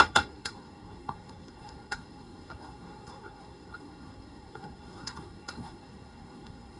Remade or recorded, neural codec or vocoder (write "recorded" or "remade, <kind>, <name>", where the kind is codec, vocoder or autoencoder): remade, codec, SNAC